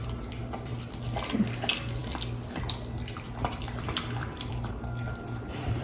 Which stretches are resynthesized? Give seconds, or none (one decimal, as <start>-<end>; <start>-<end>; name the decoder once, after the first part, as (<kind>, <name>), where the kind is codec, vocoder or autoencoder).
0.4-1.0 (vocoder, BigVGAN v2); 2.0-5.8

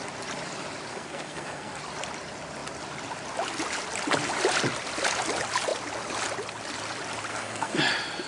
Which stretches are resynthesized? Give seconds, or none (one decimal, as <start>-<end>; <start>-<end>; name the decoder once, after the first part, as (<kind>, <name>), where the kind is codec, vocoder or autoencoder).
0.9-1.8 (codec, SNAC); 7.3-7.8

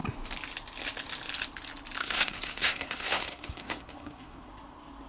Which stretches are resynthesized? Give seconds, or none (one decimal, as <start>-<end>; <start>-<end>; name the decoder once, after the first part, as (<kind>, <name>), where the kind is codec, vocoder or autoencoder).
2.0-4.5 (codec, SNAC)